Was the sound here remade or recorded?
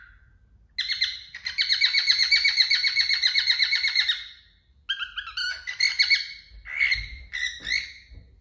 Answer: recorded